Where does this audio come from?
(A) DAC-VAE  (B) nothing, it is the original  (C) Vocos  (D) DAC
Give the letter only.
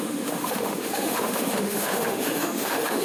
A